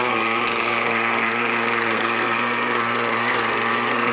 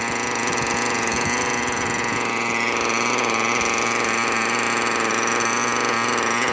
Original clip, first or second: second